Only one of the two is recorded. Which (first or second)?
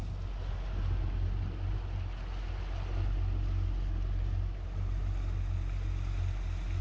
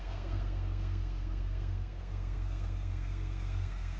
first